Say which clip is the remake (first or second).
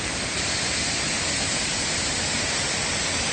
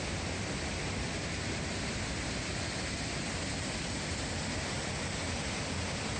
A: first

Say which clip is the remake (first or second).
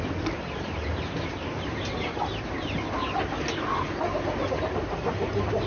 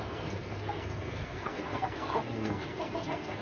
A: second